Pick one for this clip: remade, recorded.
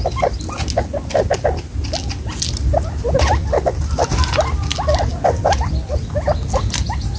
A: recorded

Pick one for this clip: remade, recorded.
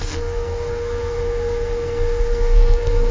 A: remade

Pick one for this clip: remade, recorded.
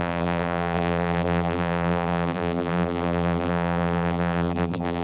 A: remade